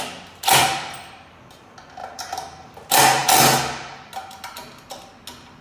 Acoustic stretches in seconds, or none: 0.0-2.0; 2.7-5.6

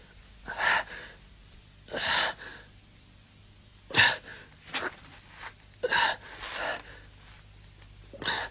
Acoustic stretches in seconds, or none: 0.0-8.5

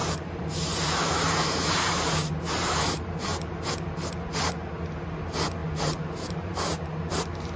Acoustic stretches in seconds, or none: 3.7-5.6; 6.8-7.6

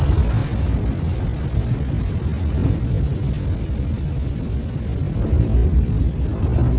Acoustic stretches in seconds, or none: 0.0-6.8

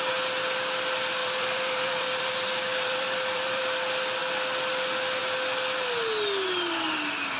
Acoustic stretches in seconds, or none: 0.0-1.2; 2.3-2.7; 3.6-7.4

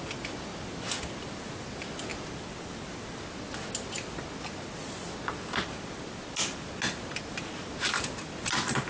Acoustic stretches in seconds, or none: 0.0-8.9

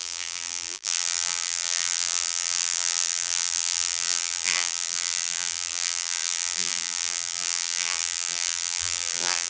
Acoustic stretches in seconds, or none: none

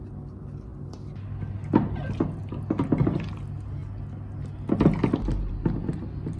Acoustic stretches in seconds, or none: 0.0-6.4